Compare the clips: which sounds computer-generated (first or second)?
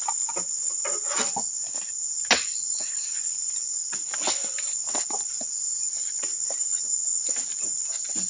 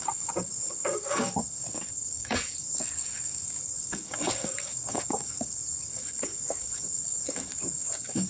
second